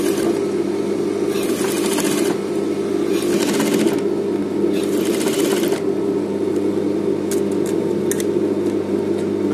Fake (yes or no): no